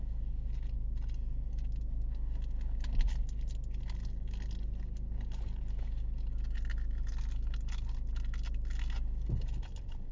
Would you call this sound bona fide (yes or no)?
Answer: yes